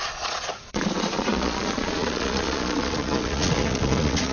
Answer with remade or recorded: remade